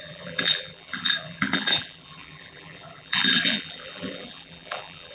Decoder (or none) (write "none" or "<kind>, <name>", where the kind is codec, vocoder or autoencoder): vocoder, BigVGAN v2